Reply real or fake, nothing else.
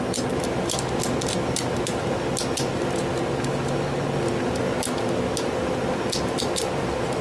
real